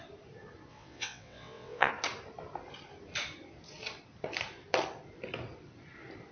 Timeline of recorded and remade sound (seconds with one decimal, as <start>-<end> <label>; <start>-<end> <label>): 0.0-0.7 recorded; 0.7-1.9 remade; 1.9-6.3 recorded